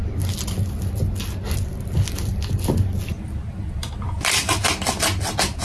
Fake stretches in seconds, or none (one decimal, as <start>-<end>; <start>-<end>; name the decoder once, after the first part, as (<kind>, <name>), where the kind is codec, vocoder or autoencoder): none